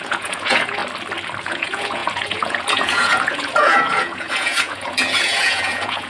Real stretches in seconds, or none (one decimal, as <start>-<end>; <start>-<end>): 0.8-1.4